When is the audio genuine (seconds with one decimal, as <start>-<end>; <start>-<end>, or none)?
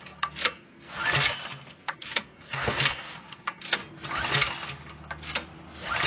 1.0-1.7; 3.8-6.1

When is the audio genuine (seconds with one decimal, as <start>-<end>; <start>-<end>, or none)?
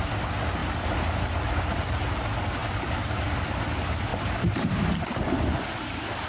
0.0-2.6; 3.2-4.1; 4.7-6.3